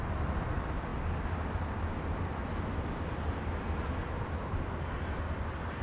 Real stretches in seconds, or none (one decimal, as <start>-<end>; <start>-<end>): 0.0-5.8